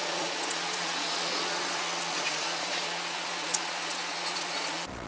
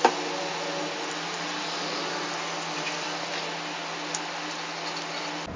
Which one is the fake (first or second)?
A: first